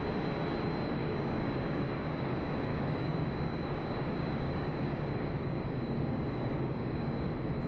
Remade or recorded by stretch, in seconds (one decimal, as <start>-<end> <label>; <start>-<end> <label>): 0.0-1.0 recorded; 1.0-2.3 remade; 2.3-2.7 recorded; 2.7-7.3 remade; 7.3-7.7 recorded